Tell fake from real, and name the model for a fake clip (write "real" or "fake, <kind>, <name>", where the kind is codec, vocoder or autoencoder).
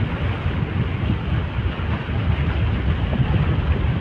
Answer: real